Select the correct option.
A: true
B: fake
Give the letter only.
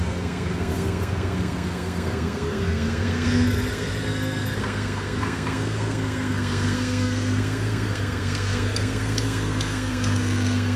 B